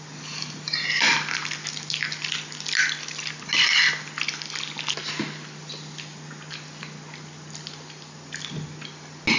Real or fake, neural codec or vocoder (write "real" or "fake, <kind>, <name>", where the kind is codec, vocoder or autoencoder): real